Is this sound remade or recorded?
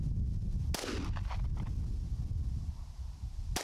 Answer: recorded